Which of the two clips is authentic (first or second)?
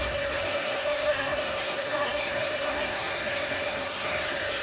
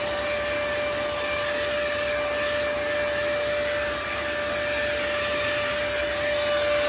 second